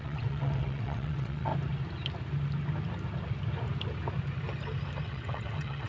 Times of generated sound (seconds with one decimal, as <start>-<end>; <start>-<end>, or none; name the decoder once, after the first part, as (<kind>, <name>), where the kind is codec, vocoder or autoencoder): 0.0-1.5 (vocoder, WaveNeXt); 5.0-5.9